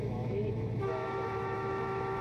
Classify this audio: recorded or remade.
remade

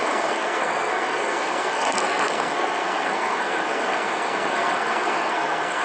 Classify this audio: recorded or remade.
remade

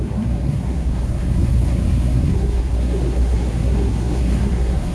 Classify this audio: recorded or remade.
remade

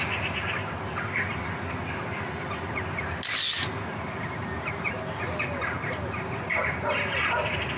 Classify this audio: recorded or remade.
recorded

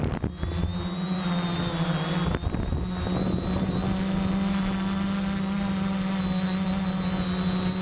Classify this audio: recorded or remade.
recorded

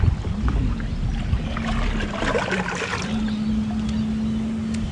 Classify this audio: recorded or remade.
recorded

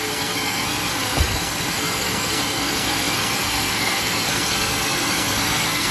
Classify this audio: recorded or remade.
remade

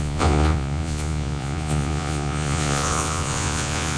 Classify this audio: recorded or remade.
remade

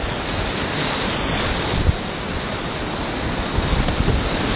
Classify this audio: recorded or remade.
recorded